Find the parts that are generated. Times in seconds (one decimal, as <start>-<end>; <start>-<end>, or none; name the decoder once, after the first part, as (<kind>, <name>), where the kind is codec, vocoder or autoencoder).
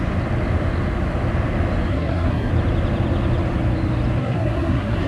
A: 1.9-2.5 (codec, SNAC); 4.2-5.1